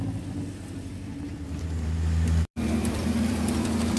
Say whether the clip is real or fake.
fake